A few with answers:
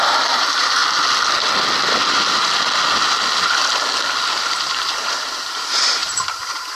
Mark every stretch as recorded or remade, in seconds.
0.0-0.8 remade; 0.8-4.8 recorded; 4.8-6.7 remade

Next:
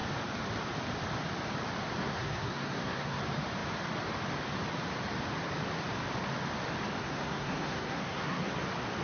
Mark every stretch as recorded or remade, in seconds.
0.0-2.0 recorded; 2.0-3.2 remade; 3.2-7.0 recorded; 7.0-8.5 remade; 8.5-9.0 recorded

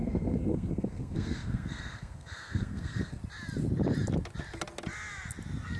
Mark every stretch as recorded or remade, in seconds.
0.0-3.2 remade; 3.2-5.8 recorded

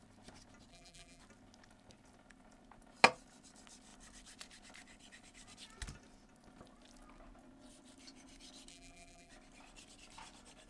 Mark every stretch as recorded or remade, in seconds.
0.0-0.7 recorded; 0.7-1.2 remade; 1.2-8.7 recorded; 8.7-9.3 remade; 9.3-10.7 recorded

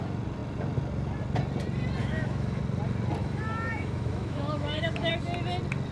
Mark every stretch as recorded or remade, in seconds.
0.0-2.0 recorded; 2.0-2.6 remade; 2.6-3.2 recorded; 3.2-5.1 remade; 5.1-5.9 recorded

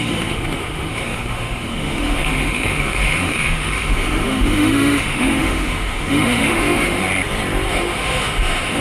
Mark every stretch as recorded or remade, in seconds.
0.0-7.0 remade; 7.0-7.7 recorded; 7.7-8.8 remade

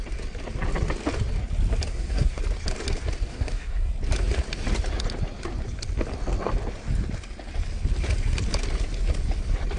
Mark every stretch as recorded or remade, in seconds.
0.0-1.9 recorded; 1.9-2.4 remade; 2.4-3.3 recorded; 3.3-3.9 remade; 3.9-9.8 recorded